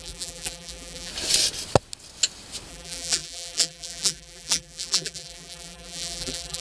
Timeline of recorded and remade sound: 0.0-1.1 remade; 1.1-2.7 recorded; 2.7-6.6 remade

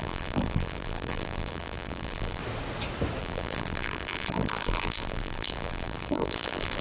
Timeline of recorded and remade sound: 0.0-2.4 remade; 2.4-3.2 recorded; 3.2-6.8 remade

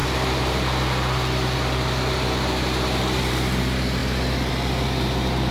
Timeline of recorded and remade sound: 0.0-5.5 recorded

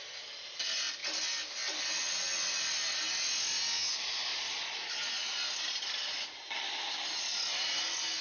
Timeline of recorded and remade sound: 0.0-8.2 recorded

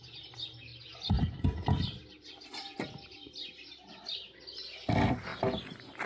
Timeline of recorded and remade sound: 0.0-0.7 recorded; 0.7-4.4 remade; 4.4-6.1 recorded

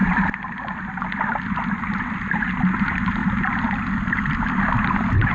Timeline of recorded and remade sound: 0.0-1.0 remade; 1.0-3.2 recorded; 3.2-5.3 remade

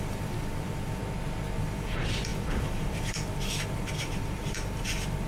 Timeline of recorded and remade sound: 0.0-1.0 remade; 1.0-1.6 recorded; 1.6-5.3 remade

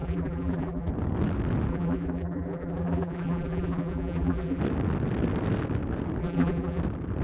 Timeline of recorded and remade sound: 0.0-0.9 remade; 0.9-1.7 recorded; 1.7-4.6 remade; 4.6-6.2 recorded; 6.2-6.8 remade; 6.8-7.2 recorded